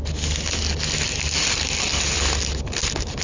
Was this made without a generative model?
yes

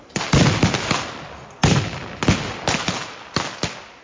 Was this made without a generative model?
yes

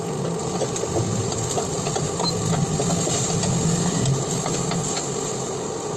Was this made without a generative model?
yes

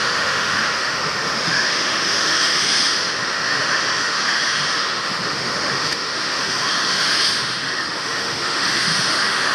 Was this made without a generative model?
no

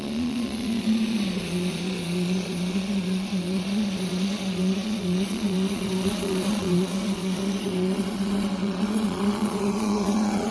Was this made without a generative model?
no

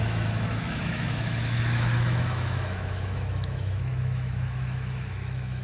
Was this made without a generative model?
no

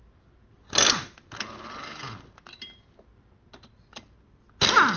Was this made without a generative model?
yes